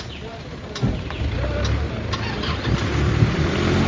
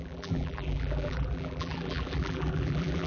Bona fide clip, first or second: first